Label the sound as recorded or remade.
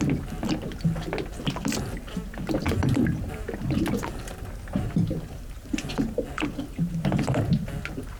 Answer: recorded